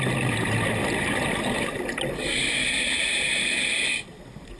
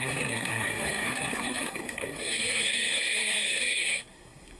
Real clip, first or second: first